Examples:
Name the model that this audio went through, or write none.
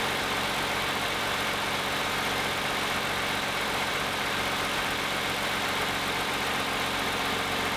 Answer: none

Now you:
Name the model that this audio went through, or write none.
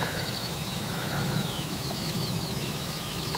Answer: autoencoder, DAC-VAE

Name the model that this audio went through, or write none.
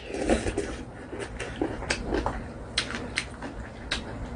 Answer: none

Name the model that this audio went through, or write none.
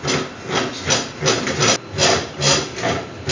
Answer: none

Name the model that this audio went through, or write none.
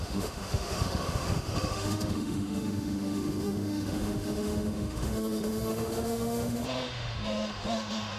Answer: autoencoder, DAC-VAE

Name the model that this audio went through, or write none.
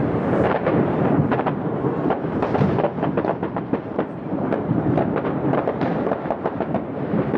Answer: vocoder, BigVGAN v2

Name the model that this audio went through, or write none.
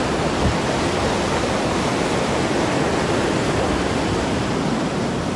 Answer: none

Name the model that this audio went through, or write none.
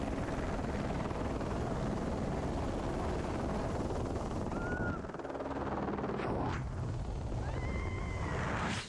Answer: none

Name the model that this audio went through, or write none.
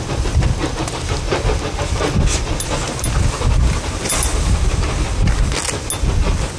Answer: none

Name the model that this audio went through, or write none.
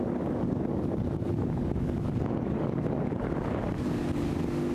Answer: codec, DAC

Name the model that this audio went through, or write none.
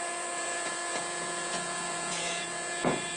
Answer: vocoder, Vocos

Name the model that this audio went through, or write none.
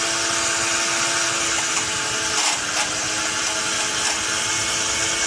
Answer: none